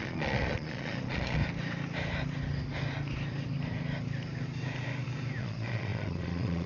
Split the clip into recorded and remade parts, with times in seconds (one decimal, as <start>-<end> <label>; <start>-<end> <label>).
0.0-1.4 remade; 1.4-5.4 recorded; 5.4-6.7 remade